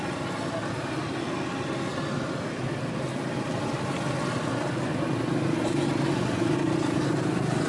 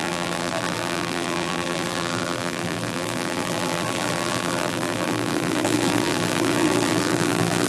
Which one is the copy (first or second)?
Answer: second